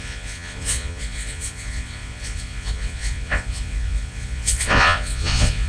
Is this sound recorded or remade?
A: remade